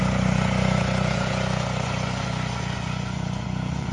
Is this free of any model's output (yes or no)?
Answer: no